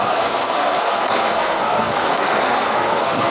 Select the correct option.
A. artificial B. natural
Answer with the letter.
A